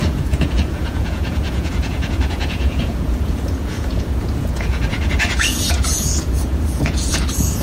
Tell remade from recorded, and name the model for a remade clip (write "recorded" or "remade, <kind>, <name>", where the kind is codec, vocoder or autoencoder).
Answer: remade, vocoder, Vocos